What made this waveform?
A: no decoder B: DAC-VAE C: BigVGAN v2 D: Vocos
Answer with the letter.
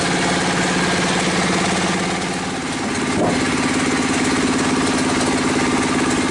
A